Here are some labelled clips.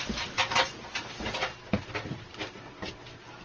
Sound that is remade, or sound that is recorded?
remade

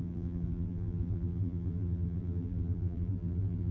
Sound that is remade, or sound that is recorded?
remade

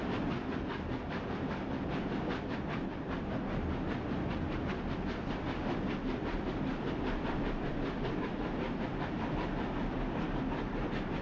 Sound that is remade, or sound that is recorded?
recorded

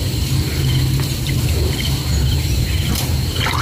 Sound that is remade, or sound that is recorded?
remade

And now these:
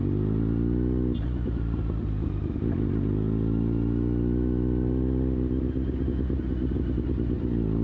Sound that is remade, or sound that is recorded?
recorded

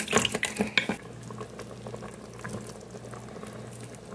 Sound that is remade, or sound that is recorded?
recorded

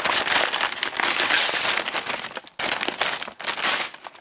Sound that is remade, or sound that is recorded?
recorded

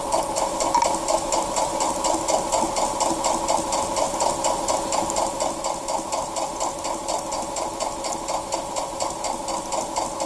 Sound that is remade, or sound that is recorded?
recorded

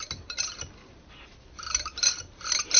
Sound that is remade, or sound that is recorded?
recorded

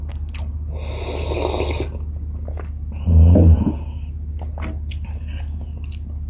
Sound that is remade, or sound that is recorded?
recorded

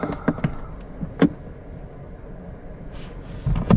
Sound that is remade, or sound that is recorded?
recorded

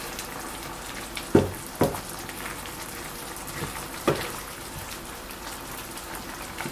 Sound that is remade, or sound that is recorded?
remade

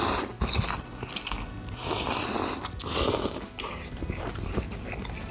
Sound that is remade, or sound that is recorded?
recorded